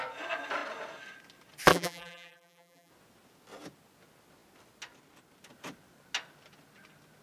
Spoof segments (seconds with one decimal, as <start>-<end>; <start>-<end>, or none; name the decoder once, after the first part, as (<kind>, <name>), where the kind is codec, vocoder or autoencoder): 1.7-2.9 (vocoder, BigVGAN v2)